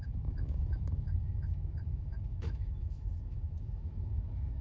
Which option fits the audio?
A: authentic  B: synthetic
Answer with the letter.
B